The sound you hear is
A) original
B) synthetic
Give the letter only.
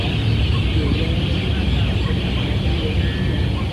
A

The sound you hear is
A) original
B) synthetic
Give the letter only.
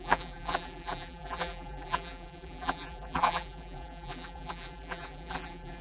B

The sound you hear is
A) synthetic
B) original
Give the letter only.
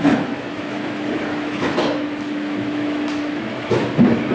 A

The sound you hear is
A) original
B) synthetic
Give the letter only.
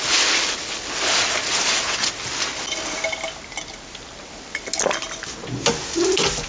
A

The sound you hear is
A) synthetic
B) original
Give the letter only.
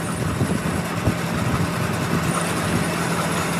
B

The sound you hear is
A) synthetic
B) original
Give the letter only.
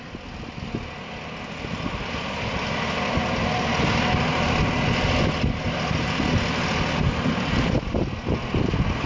B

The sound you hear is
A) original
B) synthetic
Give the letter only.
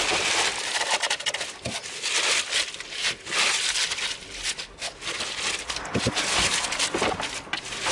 A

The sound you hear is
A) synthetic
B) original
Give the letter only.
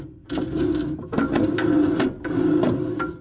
B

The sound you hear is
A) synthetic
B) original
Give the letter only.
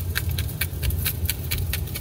B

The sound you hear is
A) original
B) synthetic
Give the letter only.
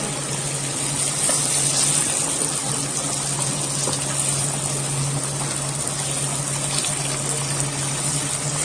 A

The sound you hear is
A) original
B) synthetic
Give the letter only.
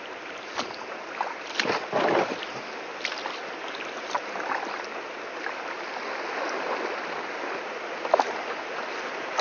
A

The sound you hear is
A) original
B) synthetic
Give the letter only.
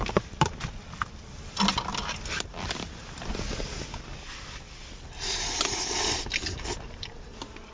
A